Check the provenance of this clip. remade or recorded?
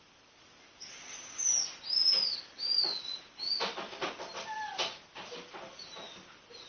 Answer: recorded